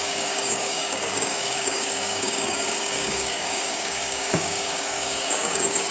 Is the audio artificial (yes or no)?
yes